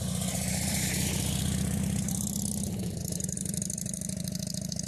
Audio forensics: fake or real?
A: fake